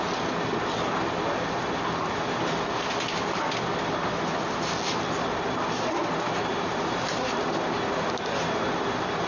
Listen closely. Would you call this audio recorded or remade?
recorded